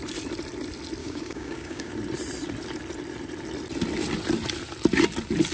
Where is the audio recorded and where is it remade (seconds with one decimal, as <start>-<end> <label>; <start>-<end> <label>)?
0.0-1.0 recorded; 1.0-1.9 remade; 1.9-5.5 recorded